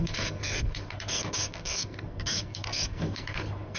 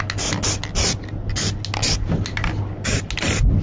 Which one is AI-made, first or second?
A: first